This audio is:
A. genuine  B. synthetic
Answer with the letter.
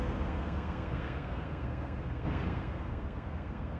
B